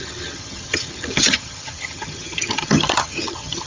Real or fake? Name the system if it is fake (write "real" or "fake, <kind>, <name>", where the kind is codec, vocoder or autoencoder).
fake, vocoder, HiFi-GAN